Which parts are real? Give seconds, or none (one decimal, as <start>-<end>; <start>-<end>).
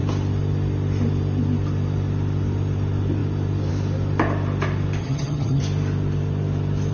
0.0-5.0; 5.6-6.9